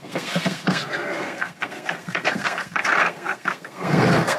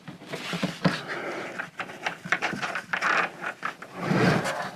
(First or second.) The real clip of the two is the second